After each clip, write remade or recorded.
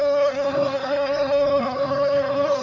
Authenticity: remade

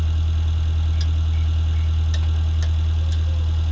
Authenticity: recorded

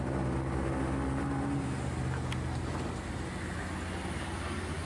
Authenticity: recorded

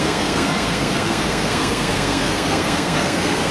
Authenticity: remade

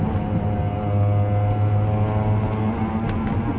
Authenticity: recorded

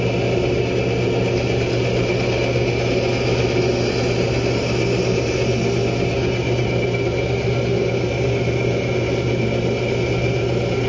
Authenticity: recorded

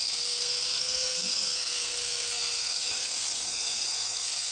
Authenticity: remade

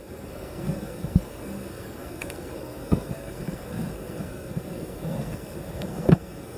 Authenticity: remade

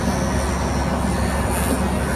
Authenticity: recorded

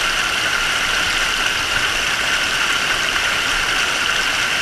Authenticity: recorded